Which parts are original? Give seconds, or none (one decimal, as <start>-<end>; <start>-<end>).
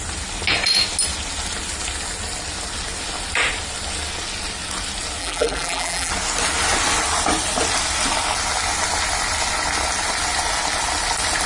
0.0-5.2; 6.1-11.5